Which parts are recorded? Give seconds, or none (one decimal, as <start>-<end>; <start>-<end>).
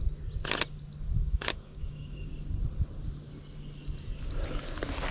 0.0-1.2; 2.3-5.1